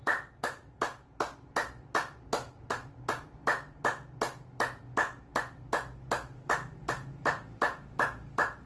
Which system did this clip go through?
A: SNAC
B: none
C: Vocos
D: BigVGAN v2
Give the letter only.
B